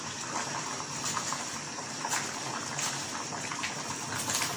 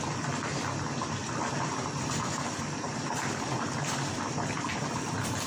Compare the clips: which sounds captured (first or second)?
first